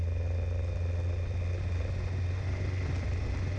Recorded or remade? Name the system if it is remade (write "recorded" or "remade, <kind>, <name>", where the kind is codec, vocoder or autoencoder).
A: recorded